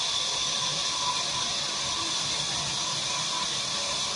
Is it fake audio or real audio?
real